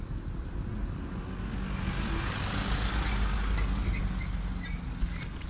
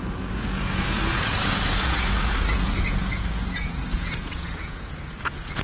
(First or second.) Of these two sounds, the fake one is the second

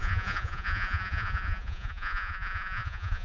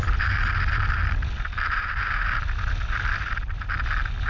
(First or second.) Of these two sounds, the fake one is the first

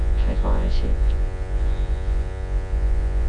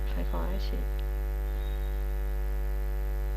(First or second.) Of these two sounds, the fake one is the first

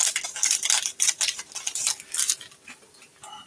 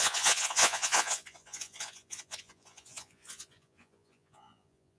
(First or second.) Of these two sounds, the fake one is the second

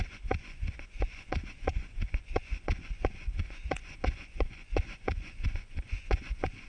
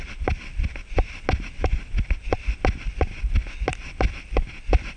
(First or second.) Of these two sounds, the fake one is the first